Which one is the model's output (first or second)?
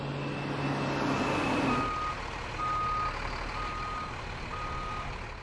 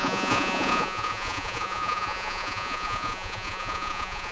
second